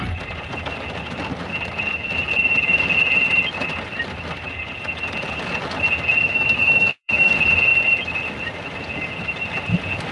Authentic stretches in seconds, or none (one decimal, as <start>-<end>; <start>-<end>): 0.0-6.3; 7.3-10.1